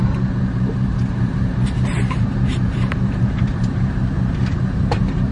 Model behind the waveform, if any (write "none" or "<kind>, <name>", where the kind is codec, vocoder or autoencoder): vocoder, BigVGAN v2